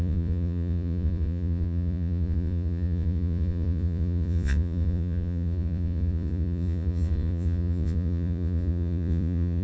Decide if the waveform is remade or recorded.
remade